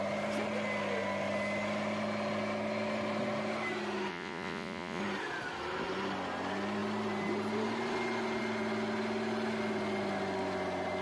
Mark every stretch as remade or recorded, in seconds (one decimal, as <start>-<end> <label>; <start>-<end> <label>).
0.0-4.1 recorded; 4.1-5.0 remade; 5.0-11.0 recorded